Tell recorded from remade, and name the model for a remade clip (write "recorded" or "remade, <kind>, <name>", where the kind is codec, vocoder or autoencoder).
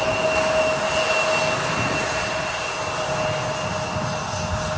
recorded